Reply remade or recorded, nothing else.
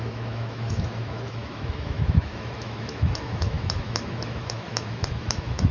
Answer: remade